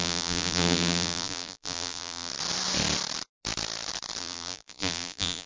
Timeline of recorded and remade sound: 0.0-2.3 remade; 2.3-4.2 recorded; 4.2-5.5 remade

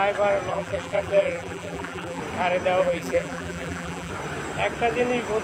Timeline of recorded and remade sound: 0.0-0.5 recorded; 0.5-2.2 remade; 2.2-2.8 recorded; 2.8-4.1 remade; 4.1-5.4 recorded

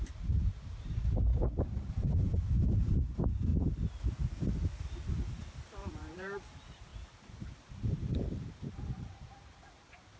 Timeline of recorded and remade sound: 0.0-1.3 remade; 1.3-1.9 recorded; 1.9-3.5 remade; 3.5-5.9 recorded; 5.9-10.2 remade

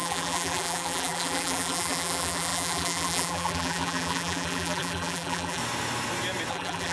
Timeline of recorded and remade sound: 0.0-5.6 remade; 5.6-6.5 recorded; 6.5-6.9 remade